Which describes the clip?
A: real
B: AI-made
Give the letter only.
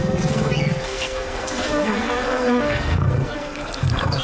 B